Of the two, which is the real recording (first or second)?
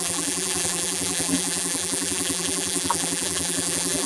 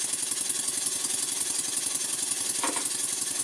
second